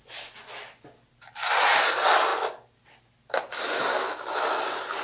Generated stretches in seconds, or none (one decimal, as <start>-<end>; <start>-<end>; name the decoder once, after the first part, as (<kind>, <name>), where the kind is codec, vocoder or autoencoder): none